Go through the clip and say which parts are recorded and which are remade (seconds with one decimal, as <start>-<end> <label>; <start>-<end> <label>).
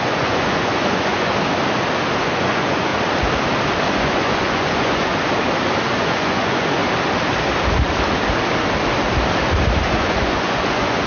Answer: 0.0-1.3 remade; 1.3-2.2 recorded; 2.2-2.9 remade; 2.9-3.9 recorded; 3.9-5.1 remade; 5.1-6.0 recorded; 6.0-6.8 remade; 6.8-10.0 recorded; 10.0-11.1 remade